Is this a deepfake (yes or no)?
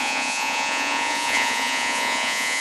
yes